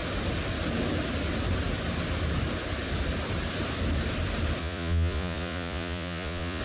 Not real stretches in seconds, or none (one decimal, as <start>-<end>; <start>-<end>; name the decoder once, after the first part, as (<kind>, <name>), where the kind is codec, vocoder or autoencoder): 4.6-6.6 (vocoder, Vocos)